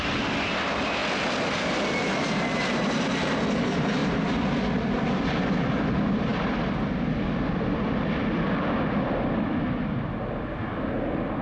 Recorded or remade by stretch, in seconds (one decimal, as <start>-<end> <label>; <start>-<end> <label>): 0.0-11.4 recorded